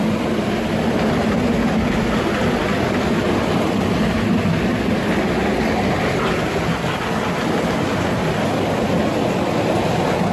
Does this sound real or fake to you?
real